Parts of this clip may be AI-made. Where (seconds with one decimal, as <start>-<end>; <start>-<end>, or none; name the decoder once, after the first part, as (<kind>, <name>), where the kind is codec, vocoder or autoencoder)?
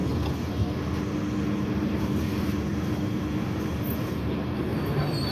2.0-5.3 (vocoder, BigVGAN v2)